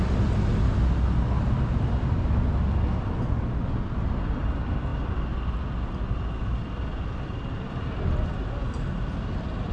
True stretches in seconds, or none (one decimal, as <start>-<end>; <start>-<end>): 0.0-9.7